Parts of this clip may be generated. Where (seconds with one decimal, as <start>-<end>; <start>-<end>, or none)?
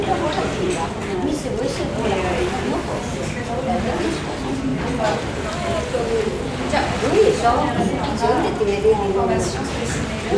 none